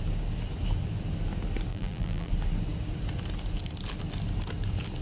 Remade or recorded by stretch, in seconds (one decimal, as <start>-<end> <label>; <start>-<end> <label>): 0.0-1.7 recorded; 1.7-2.3 remade; 2.3-5.0 recorded